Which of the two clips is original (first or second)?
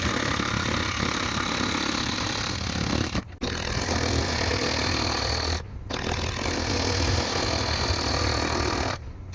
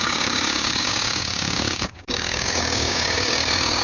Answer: first